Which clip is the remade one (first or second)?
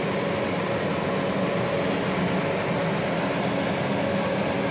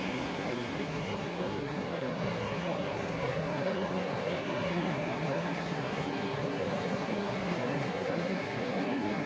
second